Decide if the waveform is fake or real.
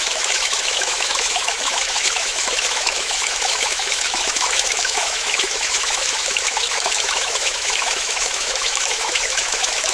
fake